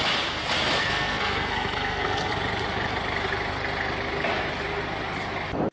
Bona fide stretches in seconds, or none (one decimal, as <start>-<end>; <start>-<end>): 0.0-0.8; 2.3-5.7